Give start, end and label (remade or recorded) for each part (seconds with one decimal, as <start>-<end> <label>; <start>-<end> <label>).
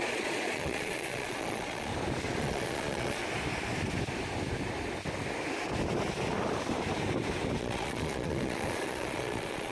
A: 0.0-1.9 remade; 1.9-2.4 recorded; 2.4-3.2 remade; 3.2-7.6 recorded; 7.6-9.7 remade